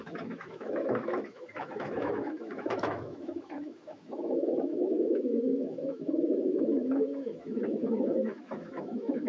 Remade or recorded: remade